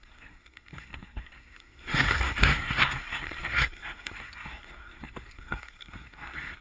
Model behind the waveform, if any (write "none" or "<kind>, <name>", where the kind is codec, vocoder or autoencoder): codec, SNAC